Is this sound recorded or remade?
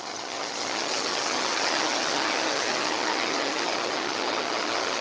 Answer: remade